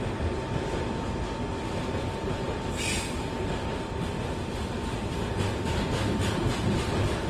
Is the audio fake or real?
real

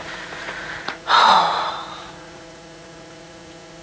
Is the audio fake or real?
fake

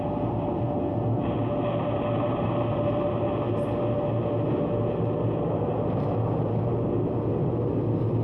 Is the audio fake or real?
real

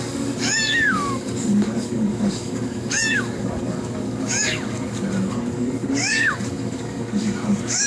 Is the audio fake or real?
fake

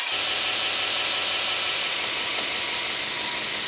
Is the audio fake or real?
real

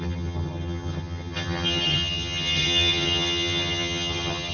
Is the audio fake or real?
fake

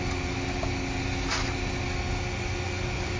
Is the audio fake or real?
real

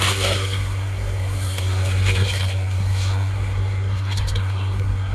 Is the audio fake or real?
fake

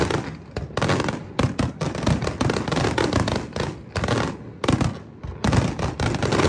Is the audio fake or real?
real